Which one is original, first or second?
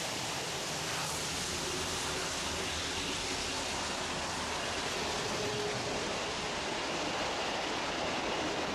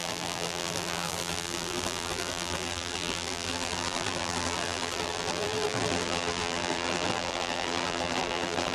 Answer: first